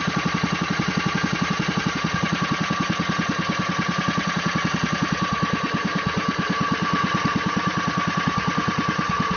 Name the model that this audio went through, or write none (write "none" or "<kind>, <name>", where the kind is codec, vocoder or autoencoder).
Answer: vocoder, Vocos